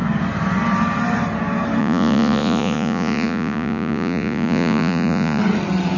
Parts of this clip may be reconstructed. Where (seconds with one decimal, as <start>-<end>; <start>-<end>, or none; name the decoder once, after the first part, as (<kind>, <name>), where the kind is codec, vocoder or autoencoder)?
1.8-5.4 (vocoder, Vocos)